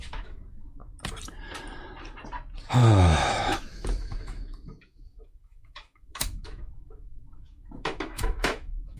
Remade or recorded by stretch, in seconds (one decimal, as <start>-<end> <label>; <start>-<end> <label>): 0.0-0.8 remade; 0.8-2.7 recorded; 2.7-9.0 remade

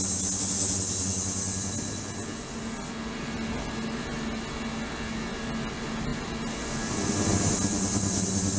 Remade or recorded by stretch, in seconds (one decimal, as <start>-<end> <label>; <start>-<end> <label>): 0.0-8.6 recorded